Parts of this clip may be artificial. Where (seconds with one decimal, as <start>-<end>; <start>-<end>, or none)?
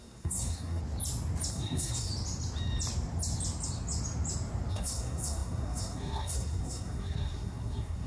0.0-0.8; 1.5-2.1; 4.7-8.1